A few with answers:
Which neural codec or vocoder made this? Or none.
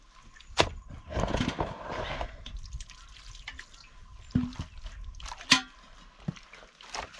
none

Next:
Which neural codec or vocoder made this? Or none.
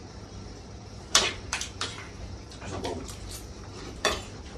vocoder, BigVGAN v2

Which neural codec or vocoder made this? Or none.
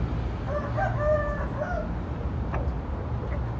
none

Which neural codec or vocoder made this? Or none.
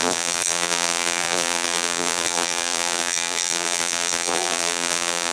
vocoder, BigVGAN v2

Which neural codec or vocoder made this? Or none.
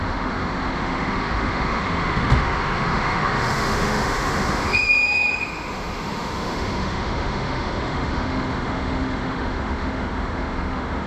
autoencoder, DAC-VAE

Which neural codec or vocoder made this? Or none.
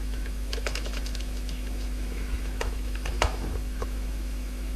autoencoder, DAC-VAE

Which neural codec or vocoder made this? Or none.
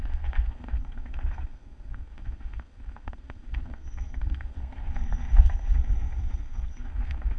codec, SNAC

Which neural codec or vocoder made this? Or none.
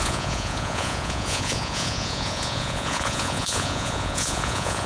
vocoder, Vocos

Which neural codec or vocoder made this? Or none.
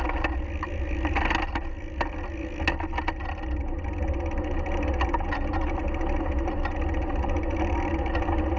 none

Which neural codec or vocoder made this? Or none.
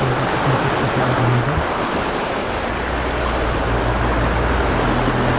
none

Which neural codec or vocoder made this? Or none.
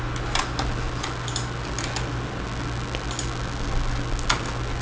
none